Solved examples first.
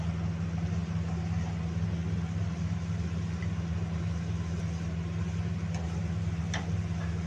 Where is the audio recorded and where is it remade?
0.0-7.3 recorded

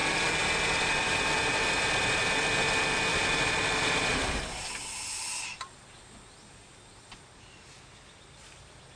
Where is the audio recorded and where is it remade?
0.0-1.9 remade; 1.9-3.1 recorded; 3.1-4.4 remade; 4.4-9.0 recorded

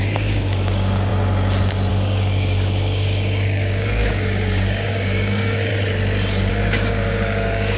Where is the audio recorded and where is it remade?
0.0-1.1 remade; 1.1-1.9 recorded; 1.9-5.7 remade; 5.7-6.5 recorded; 6.5-7.8 remade